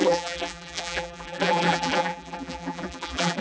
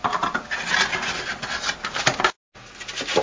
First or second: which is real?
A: second